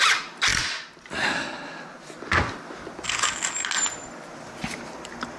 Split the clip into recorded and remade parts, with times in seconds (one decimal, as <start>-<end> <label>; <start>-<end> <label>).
0.0-5.4 recorded